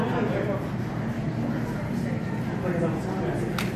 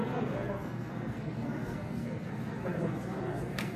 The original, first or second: first